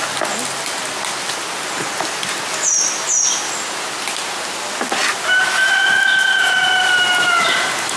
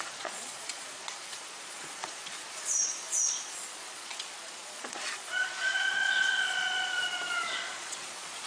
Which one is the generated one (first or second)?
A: second